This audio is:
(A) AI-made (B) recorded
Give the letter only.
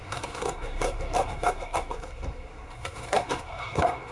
A